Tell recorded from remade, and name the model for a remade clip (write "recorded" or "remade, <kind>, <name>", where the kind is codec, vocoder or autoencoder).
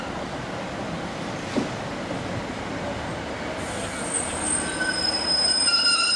recorded